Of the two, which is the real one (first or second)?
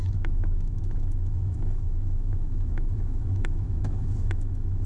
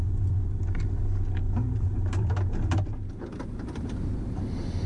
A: second